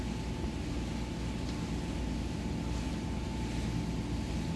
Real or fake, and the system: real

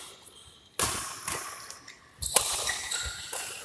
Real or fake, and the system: real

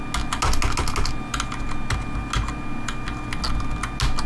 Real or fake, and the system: real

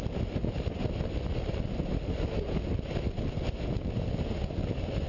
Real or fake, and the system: real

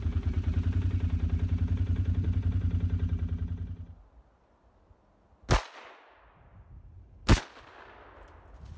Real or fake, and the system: real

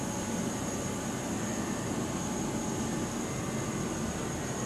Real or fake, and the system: real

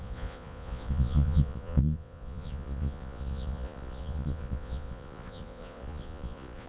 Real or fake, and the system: fake, vocoder, Vocos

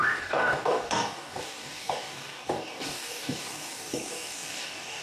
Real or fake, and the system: fake, codec, DAC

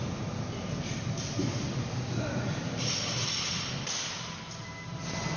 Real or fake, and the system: real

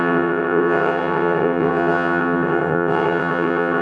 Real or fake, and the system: fake, vocoder, WaveNeXt